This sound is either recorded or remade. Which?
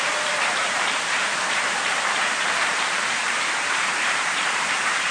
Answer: remade